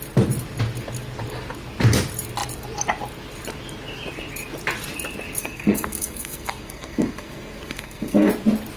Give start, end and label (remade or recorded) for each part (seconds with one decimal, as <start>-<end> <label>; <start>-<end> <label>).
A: 0.0-5.4 recorded; 5.4-8.3 remade; 8.3-8.8 recorded